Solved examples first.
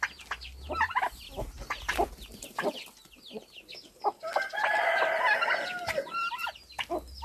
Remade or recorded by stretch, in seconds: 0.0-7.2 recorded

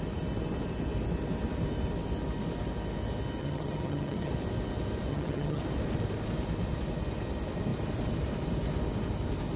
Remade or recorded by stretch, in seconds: 0.0-3.4 recorded; 3.4-4.3 remade; 4.3-5.1 recorded; 5.1-5.6 remade; 5.6-9.6 recorded

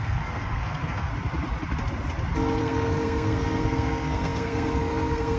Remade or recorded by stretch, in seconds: 0.0-1.1 remade; 1.1-2.6 recorded; 2.6-5.4 remade

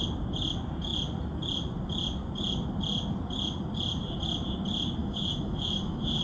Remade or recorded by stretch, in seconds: 0.0-5.0 recorded; 5.0-6.2 remade

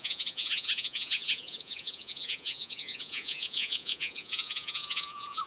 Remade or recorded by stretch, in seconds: 0.0-5.5 remade

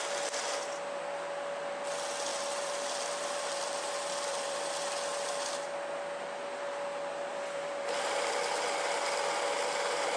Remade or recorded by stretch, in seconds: 0.0-2.3 recorded; 2.3-4.6 remade; 4.6-7.3 recorded; 7.3-8.4 remade; 8.4-10.2 recorded

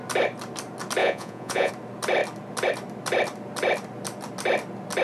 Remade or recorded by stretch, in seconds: 0.0-1.0 recorded; 1.0-1.7 remade; 1.7-5.0 recorded

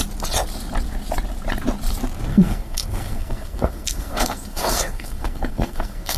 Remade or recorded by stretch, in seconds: 0.0-2.3 recorded; 2.3-6.2 remade